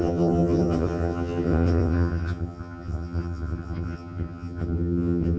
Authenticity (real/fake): fake